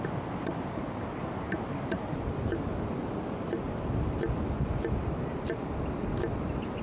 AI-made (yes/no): no